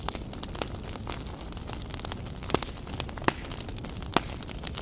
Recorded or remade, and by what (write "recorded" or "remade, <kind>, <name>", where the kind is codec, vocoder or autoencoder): recorded